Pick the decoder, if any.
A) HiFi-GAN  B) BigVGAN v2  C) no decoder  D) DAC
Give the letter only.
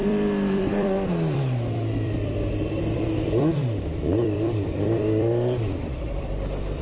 B